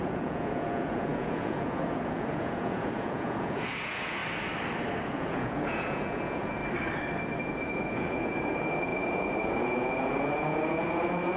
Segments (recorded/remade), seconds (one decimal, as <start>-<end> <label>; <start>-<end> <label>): 0.0-4.2 remade; 4.2-5.0 recorded; 5.0-6.6 remade; 6.6-7.4 recorded; 7.4-11.4 remade